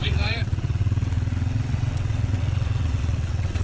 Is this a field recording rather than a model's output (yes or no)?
no